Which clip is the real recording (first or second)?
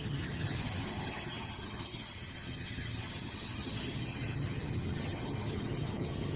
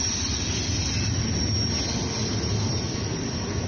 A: second